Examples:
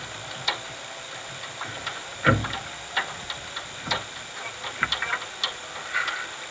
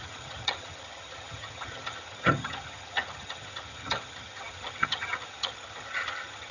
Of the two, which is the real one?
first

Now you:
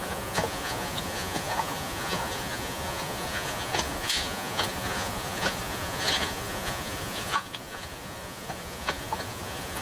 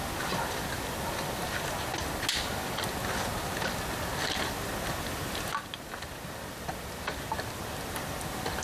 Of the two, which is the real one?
second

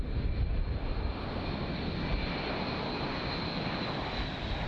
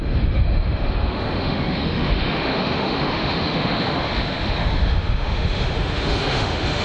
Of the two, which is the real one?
first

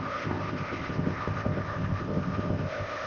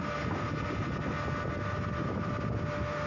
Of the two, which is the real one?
second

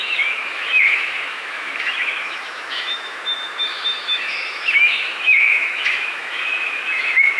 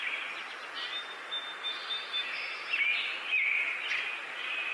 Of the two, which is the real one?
second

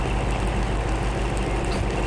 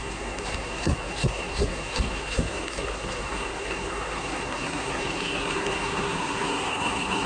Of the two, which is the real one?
first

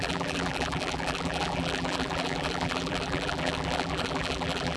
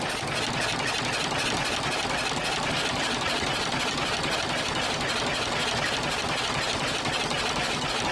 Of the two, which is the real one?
second